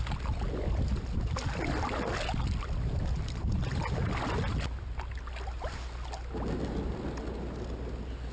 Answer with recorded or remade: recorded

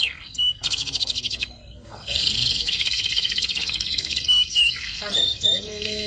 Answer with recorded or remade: remade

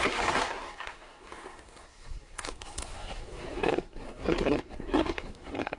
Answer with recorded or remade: remade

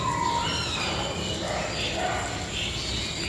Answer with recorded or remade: recorded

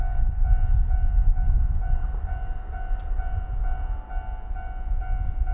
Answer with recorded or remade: recorded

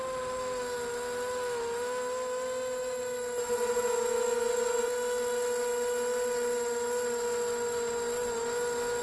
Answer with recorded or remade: recorded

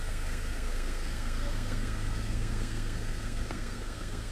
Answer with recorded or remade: remade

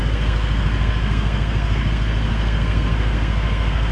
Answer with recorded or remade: remade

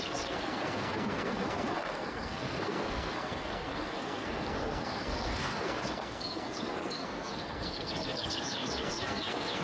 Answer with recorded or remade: remade